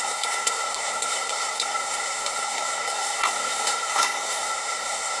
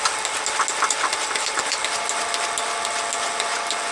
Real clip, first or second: second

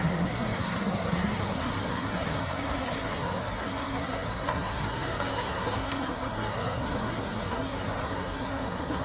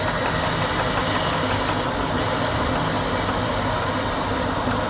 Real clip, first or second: second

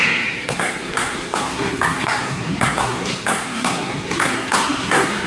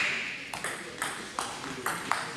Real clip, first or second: second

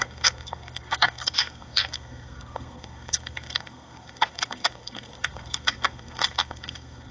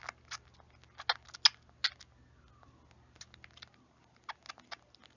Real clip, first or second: second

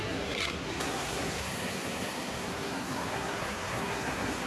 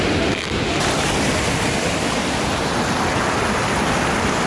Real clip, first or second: second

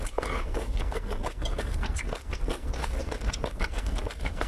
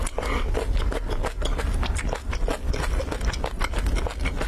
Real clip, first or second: second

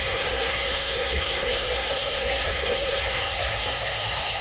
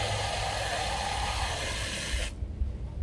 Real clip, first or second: second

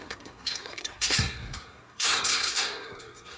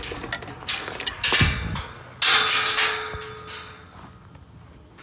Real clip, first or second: second